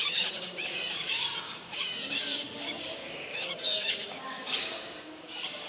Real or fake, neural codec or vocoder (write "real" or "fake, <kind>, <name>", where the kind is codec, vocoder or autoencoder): fake, codec, DAC